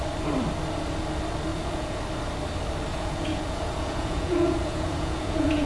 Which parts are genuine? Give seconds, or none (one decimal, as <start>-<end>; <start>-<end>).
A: 0.0-1.5; 2.0-2.9